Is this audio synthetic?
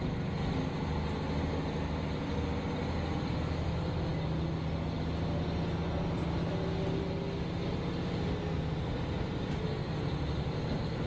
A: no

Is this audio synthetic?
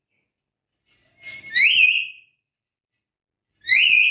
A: no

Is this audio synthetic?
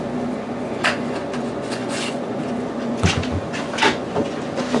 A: yes